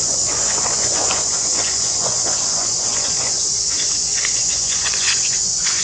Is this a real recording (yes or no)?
no